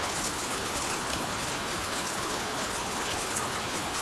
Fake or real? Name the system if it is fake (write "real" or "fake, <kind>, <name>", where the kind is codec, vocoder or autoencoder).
fake, codec, HILCodec